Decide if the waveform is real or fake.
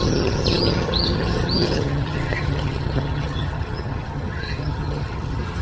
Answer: fake